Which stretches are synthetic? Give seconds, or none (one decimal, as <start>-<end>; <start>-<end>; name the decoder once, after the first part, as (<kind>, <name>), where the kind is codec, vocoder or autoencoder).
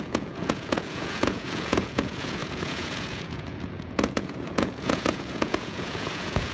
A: 0.0-6.5 (vocoder, Vocos)